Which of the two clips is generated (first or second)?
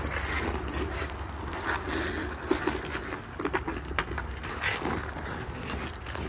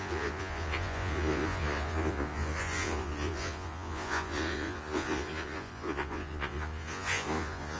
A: second